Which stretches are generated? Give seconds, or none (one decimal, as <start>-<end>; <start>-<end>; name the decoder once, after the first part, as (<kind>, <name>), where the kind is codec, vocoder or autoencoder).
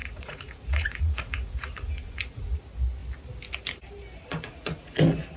0.0-2.6 (vocoder, Vocos); 4.3-5.0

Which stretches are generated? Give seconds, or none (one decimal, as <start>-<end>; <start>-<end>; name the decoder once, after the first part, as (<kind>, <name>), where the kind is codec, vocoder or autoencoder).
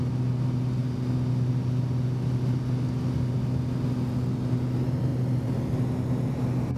none